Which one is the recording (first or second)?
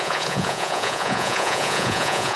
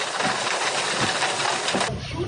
second